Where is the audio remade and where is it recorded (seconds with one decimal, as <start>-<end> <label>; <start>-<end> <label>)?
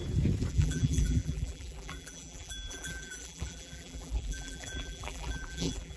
0.0-0.5 recorded; 0.5-6.0 remade